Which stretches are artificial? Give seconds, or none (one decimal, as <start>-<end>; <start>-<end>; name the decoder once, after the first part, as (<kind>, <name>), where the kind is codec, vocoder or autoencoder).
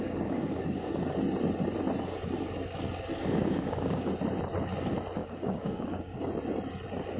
0.0-0.9 (codec, DAC); 3.2-4.1; 5.2-6.3